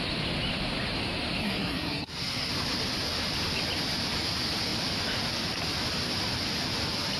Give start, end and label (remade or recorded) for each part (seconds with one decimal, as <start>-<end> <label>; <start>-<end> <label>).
0.0-1.4 recorded; 1.4-2.5 remade; 2.5-7.2 recorded